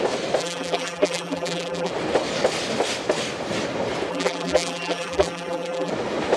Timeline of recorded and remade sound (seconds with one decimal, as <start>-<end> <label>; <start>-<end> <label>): 0.0-0.4 recorded; 0.4-1.9 remade; 1.9-4.1 recorded; 4.1-5.9 remade; 5.9-6.4 recorded